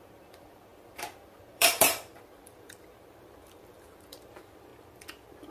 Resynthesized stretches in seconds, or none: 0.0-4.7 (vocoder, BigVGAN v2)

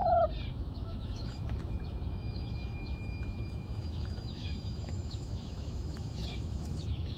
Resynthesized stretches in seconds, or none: 0.5-7.2 (autoencoder, DAC-VAE)

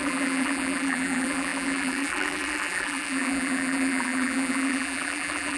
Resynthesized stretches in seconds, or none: 0.0-5.6 (vocoder, BigVGAN v2)

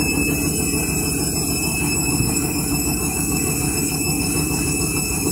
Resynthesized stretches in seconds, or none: 1.7-5.3 (codec, DAC)